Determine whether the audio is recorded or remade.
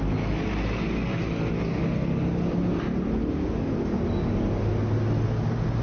recorded